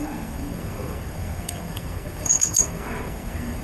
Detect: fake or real fake